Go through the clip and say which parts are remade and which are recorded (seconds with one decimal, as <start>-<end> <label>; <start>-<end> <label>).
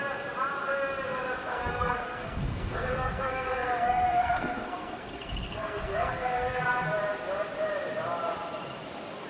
0.0-1.5 recorded; 1.5-6.6 remade; 6.6-9.3 recorded